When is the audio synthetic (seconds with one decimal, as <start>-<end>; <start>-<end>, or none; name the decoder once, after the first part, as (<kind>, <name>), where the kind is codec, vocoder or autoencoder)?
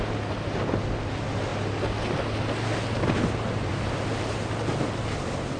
none